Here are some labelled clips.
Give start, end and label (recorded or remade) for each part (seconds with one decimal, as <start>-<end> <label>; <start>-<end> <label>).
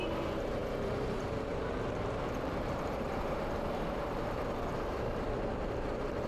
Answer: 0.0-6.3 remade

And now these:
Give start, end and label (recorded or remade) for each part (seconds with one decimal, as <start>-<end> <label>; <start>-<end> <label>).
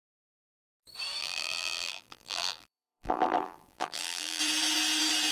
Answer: 0.0-1.2 recorded; 1.2-4.4 remade; 4.4-5.3 recorded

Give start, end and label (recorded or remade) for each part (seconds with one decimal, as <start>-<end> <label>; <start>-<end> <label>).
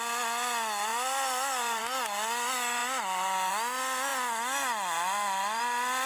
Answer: 0.0-0.9 recorded; 0.9-1.8 remade; 1.8-6.1 recorded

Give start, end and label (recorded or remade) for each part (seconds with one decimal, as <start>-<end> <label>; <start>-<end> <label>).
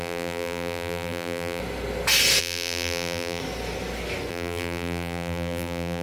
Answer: 0.0-1.6 remade; 1.6-2.4 recorded; 2.4-3.4 remade; 3.4-4.3 recorded; 4.3-6.0 remade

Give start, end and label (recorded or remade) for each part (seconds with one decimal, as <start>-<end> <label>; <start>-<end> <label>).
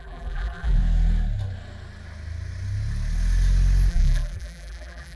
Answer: 0.0-0.8 remade; 0.8-3.9 recorded; 3.9-5.2 remade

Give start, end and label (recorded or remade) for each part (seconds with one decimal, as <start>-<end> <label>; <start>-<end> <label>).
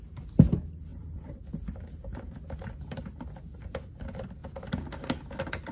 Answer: 0.0-0.9 recorded; 0.9-1.4 remade; 1.4-1.9 recorded; 1.9-3.0 remade; 3.0-5.7 recorded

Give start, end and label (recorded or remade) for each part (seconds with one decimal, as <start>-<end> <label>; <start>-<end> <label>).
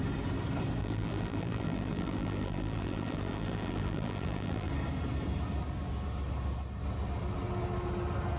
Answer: 0.0-0.8 recorded; 0.8-4.7 remade; 4.7-8.4 recorded